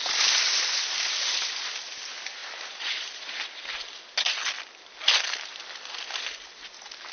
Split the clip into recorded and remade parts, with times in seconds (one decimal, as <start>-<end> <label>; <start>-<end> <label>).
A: 0.0-7.1 recorded